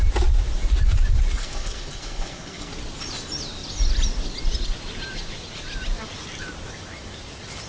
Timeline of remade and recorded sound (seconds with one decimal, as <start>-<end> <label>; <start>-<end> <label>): 0.0-1.4 recorded; 1.4-2.7 remade; 2.7-7.7 recorded